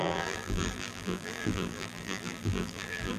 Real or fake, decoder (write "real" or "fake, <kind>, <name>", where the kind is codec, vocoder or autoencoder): fake, vocoder, BigVGAN v2